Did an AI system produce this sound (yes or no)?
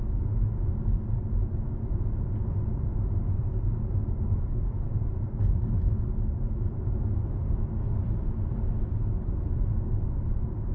no